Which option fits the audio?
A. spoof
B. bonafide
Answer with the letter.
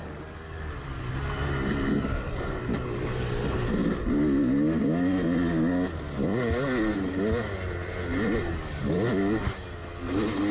B